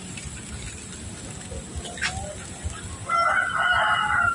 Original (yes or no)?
yes